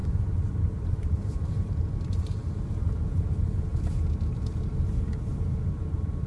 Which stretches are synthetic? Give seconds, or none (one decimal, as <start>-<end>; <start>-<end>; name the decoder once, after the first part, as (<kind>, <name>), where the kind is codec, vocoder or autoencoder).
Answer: 0.0-2.6 (vocoder, BigVGAN v2)